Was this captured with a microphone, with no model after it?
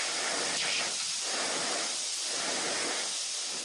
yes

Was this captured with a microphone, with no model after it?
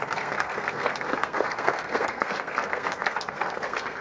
no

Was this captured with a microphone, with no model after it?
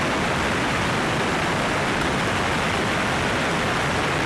yes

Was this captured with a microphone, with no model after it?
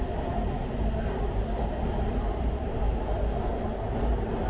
yes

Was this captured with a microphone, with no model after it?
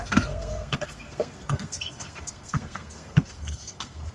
no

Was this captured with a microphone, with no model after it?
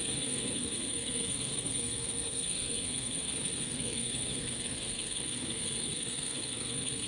no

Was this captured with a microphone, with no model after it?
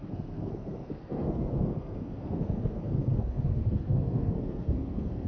no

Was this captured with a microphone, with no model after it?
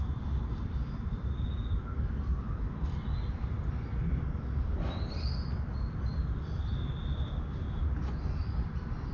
yes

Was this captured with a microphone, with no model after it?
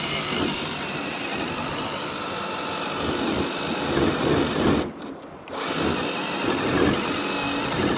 yes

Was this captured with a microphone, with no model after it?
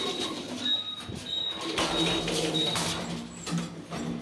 yes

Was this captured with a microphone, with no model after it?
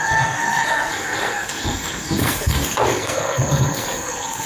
no